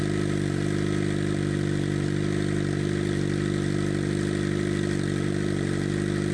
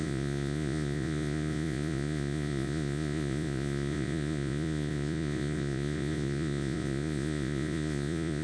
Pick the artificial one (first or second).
second